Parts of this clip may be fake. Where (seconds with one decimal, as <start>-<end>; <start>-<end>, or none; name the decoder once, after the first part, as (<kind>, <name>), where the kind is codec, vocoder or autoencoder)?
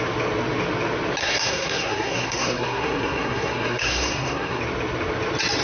1.2-4.6 (codec, SNAC)